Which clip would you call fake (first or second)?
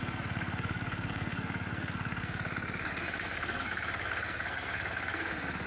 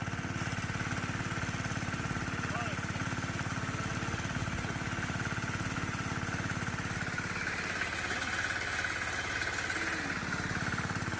first